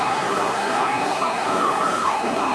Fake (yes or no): yes